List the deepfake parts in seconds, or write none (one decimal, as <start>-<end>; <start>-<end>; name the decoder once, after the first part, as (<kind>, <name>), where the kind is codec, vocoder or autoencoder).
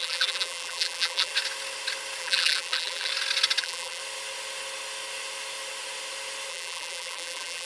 0.0-1.3 (vocoder, BigVGAN v2); 2.2-3.1; 3.6-4.0; 6.5-7.7